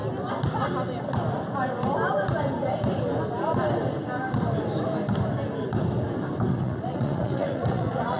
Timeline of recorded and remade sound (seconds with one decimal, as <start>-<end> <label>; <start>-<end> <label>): 0.0-6.5 recorded; 6.5-8.2 remade